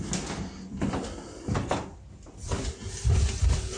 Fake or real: real